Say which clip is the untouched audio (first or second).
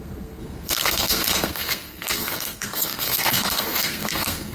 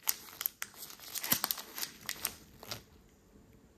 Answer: second